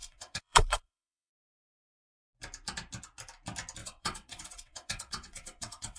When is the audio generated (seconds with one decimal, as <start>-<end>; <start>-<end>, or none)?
0.0-1.3; 3.8-6.0